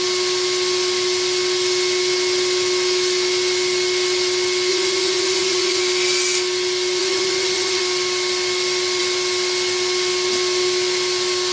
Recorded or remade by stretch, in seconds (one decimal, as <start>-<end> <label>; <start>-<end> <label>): 0.0-4.7 recorded; 4.7-5.8 remade; 5.8-7.0 recorded; 7.0-7.8 remade; 7.8-11.5 recorded